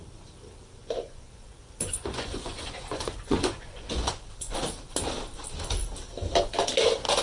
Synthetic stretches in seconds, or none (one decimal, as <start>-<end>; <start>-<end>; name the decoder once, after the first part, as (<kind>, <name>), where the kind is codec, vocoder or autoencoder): 0.8-4.6 (vocoder, Vocos)